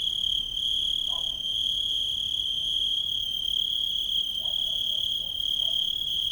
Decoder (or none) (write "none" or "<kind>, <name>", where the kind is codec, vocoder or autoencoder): none